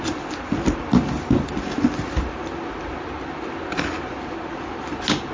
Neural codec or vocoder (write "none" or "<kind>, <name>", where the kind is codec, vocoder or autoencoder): none